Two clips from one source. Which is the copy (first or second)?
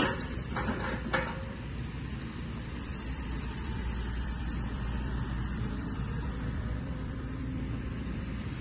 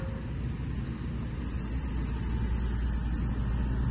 first